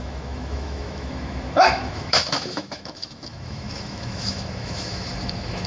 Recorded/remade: remade